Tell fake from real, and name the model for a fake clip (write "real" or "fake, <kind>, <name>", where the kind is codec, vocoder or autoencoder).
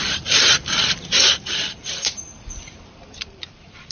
fake, vocoder, BigVGAN v2